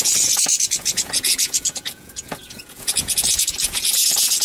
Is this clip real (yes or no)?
no